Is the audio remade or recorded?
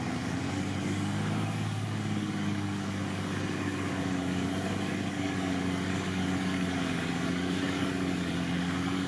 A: remade